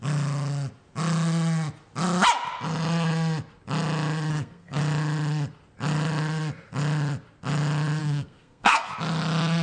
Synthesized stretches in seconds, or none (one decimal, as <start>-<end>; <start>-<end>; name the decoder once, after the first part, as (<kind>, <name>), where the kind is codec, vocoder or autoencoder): 4.3-4.8 (codec, SNAC); 8.0-8.9